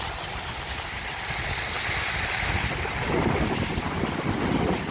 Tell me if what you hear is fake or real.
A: real